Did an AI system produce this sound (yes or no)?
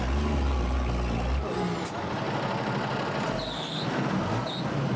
no